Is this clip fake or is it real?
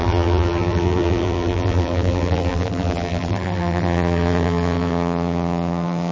fake